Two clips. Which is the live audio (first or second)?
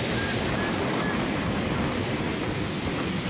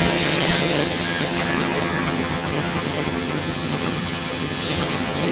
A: first